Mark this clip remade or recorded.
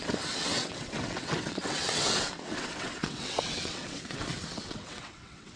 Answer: remade